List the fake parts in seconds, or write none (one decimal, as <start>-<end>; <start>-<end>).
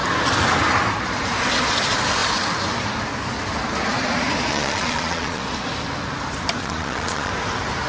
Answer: 4.5-5.4; 6.6-7.3